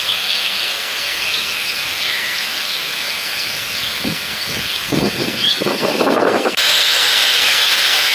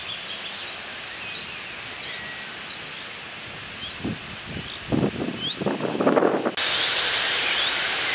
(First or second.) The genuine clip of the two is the second